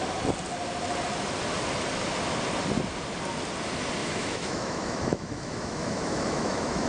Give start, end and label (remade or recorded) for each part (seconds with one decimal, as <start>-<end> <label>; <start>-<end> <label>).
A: 0.0-4.0 recorded; 4.0-6.9 remade